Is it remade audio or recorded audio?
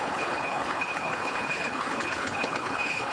remade